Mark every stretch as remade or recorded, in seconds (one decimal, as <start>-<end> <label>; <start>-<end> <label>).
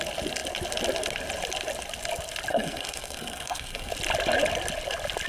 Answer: 0.0-2.5 recorded; 2.5-3.9 remade; 3.9-5.3 recorded